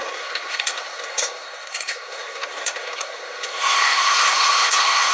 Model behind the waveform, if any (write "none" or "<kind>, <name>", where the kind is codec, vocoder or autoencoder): codec, SNAC